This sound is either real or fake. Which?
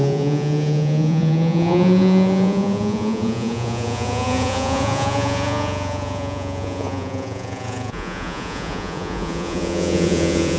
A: fake